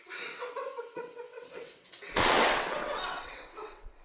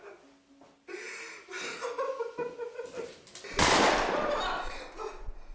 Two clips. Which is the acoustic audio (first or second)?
second